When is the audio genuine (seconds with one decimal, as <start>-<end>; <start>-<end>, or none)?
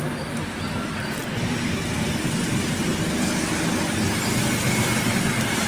0.0-5.7